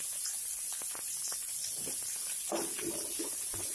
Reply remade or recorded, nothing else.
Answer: recorded